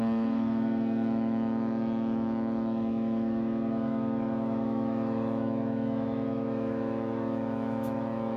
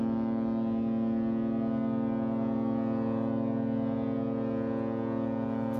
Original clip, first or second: second